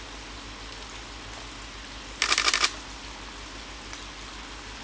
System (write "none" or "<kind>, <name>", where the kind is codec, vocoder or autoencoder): none